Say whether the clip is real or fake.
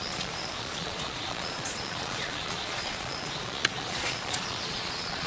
fake